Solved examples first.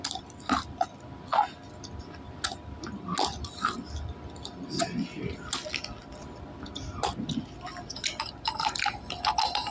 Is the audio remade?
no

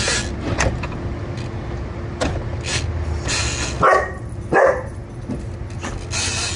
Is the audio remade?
no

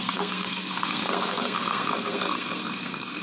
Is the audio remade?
yes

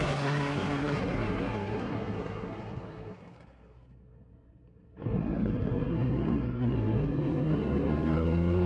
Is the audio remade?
yes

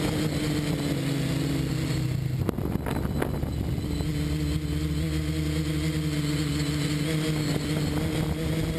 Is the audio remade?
no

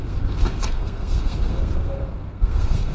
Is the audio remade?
yes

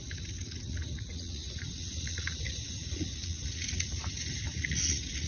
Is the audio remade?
yes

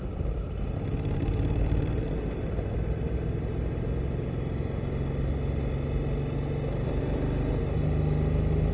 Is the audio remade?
no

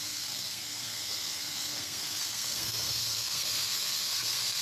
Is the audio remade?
yes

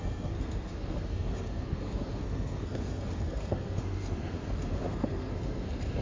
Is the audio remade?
yes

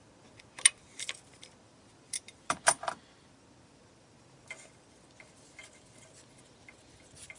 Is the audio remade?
yes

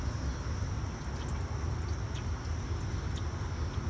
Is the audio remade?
no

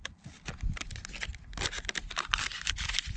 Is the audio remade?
no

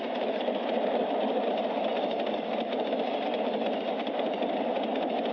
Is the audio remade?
no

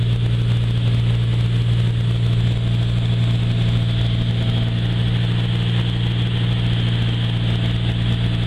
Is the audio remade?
no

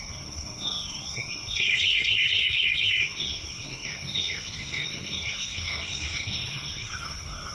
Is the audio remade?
yes